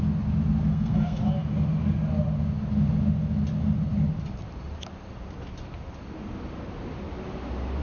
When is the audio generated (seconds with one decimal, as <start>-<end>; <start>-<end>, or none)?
0.7-1.2